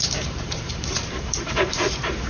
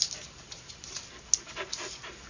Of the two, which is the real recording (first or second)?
second